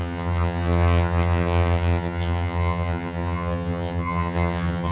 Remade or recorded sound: remade